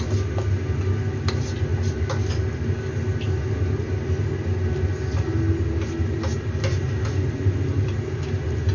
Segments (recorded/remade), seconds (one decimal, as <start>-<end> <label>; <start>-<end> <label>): 0.0-8.7 recorded